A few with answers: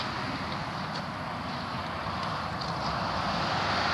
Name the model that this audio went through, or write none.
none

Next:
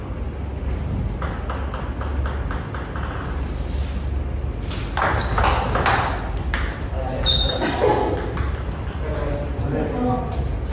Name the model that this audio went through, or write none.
none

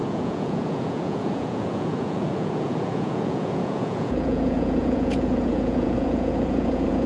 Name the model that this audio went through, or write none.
vocoder, Vocos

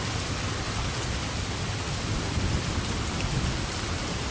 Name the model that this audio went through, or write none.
none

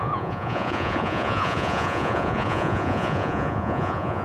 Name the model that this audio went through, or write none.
vocoder, Vocos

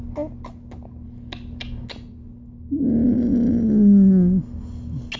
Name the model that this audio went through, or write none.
none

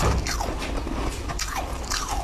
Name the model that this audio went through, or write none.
none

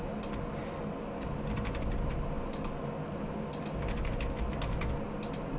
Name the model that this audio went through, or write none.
none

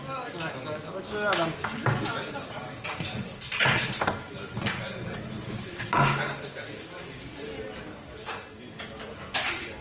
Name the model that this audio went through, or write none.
none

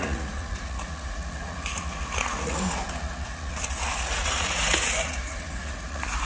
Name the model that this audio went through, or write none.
vocoder, Vocos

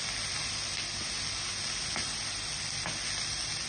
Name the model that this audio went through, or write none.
none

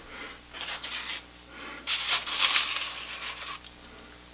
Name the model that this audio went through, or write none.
none